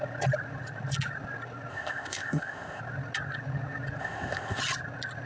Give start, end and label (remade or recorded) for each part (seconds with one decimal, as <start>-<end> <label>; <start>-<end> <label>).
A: 0.0-1.7 recorded; 1.7-2.8 remade; 2.8-4.0 recorded; 4.0-4.6 remade; 4.6-5.3 recorded